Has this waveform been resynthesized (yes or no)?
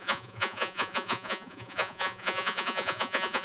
yes